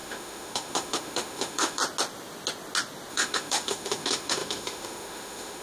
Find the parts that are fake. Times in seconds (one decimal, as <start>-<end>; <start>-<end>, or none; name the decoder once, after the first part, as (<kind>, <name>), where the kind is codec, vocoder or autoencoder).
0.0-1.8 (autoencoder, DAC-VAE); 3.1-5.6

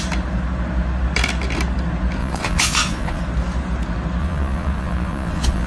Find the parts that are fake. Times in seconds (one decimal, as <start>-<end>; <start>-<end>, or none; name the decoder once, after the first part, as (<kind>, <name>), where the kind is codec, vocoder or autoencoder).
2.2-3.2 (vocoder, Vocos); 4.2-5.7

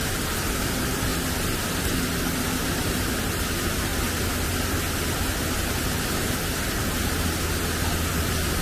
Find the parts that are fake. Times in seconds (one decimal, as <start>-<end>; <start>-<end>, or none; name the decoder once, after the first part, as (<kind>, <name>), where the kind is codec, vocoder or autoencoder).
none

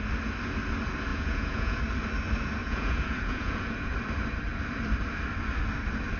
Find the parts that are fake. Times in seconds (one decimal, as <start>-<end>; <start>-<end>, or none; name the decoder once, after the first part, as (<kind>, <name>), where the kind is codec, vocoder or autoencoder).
1.1-1.8 (vocoder, Vocos); 2.6-3.9

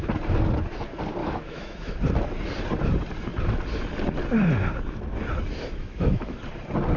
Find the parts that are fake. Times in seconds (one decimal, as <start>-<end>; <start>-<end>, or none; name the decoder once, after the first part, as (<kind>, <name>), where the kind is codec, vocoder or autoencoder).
1.2-2.0 (autoencoder, DAC-VAE); 5.8-6.4

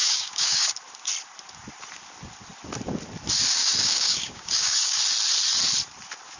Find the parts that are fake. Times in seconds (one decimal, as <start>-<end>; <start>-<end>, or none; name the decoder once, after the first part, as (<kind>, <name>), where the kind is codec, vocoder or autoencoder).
0.0-0.7 (codec, DAC); 3.6-5.0

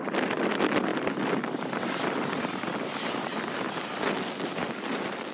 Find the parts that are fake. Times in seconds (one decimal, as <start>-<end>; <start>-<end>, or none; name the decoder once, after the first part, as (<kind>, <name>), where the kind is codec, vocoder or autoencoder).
none

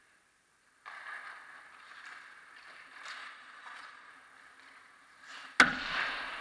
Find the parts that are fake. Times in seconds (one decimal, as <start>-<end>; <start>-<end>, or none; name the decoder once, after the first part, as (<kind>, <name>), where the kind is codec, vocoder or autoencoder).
3.2-4.1 (vocoder, Vocos)